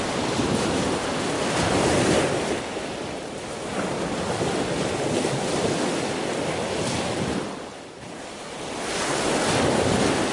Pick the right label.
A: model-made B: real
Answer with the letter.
B